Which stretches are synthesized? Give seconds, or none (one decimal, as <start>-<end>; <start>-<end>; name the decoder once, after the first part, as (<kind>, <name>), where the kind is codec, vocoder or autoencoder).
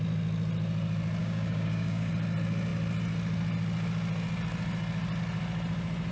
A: 1.2-2.1 (codec, DAC)